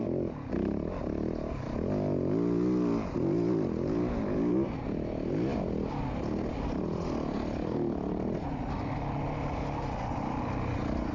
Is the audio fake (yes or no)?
no